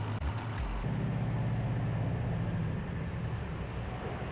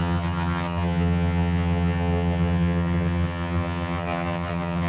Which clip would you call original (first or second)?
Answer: first